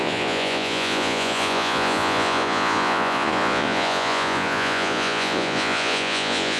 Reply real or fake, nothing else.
fake